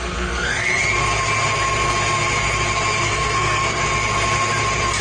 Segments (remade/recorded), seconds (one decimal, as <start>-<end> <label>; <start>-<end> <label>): 0.0-0.7 remade; 0.7-3.0 recorded; 3.0-3.8 remade; 3.8-5.0 recorded